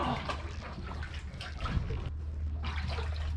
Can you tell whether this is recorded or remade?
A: recorded